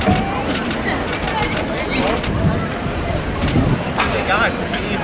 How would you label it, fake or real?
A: real